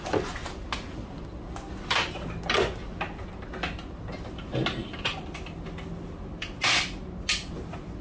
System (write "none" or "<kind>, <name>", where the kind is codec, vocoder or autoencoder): none